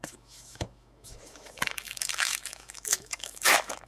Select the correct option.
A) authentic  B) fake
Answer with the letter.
B